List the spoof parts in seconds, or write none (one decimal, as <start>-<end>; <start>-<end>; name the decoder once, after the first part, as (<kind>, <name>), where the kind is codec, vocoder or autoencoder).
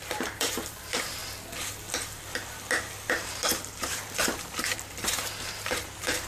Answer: 0.0-1.2 (vocoder, BigVGAN v2); 3.2-6.3